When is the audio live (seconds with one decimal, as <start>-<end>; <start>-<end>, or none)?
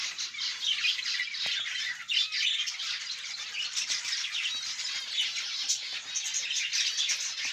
0.0-7.5